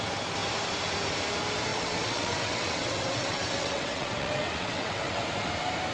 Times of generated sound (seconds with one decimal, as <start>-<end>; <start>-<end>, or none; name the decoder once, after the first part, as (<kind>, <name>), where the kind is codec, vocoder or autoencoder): 1.7-5.2 (vocoder, WaveNeXt)